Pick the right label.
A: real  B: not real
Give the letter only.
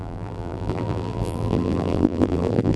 B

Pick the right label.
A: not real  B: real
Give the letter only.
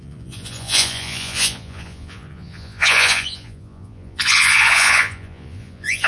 A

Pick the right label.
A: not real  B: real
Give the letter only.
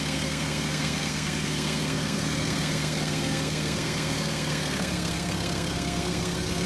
A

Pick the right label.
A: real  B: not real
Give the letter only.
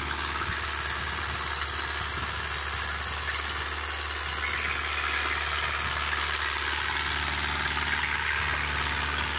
A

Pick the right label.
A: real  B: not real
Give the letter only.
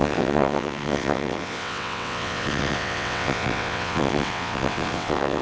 B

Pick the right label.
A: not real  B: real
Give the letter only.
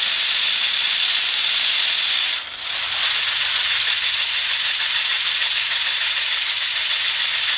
B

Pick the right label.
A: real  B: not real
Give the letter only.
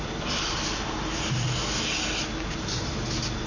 A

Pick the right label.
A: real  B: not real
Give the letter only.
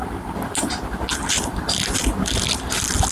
A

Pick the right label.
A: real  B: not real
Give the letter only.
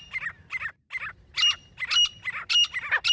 A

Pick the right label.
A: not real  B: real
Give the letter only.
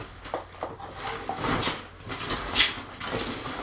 B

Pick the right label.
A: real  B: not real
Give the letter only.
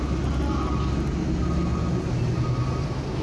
A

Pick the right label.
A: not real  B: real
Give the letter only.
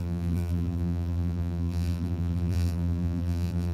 A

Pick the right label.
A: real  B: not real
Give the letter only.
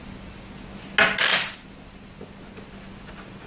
A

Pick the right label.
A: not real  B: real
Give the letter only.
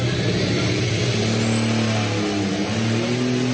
B